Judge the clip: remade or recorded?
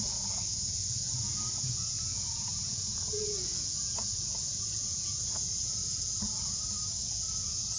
remade